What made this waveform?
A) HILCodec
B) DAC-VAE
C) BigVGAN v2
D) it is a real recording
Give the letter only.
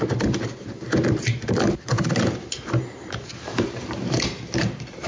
C